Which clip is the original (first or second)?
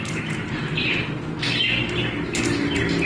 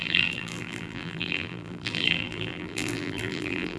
first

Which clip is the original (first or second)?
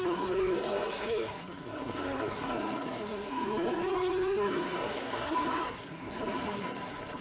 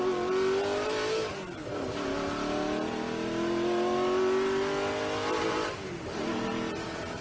second